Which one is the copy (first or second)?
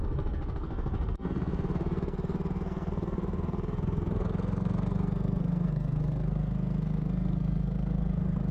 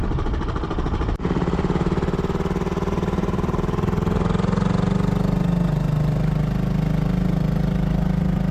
first